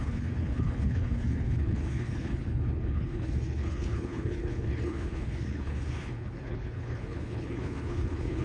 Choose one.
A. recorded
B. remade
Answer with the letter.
B